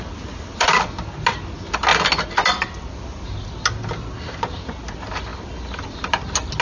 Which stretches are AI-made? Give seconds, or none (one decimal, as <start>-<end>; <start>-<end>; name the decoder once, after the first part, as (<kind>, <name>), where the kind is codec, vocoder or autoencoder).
none